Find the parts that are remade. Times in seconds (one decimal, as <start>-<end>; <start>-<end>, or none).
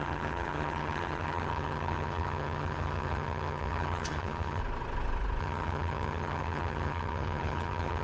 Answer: 0.0-4.6; 5.4-8.0